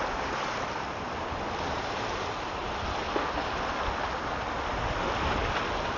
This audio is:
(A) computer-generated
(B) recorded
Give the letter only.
B